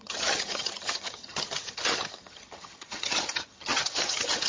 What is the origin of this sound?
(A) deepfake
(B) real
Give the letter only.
A